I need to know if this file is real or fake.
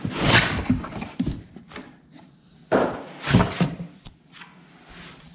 real